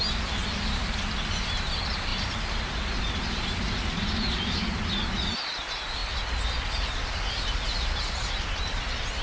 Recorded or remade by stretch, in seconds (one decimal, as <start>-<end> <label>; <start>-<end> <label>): 0.0-9.2 recorded